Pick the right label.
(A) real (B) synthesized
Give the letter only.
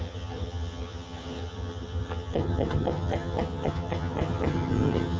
B